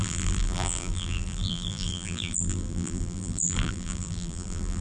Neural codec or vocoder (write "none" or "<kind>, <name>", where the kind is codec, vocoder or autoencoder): vocoder, BigVGAN v2